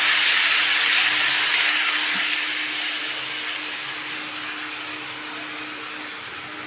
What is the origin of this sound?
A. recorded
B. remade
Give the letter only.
A